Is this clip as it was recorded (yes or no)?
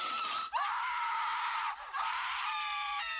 no